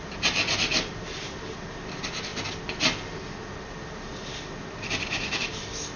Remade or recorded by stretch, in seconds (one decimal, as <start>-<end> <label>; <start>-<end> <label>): 0.0-6.0 recorded